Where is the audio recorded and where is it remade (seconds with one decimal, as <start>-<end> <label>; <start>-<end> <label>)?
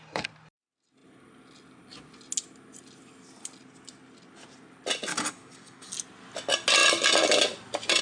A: 0.0-5.1 recorded; 5.1-5.9 remade; 5.9-8.0 recorded